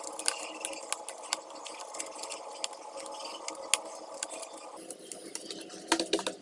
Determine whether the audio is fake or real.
real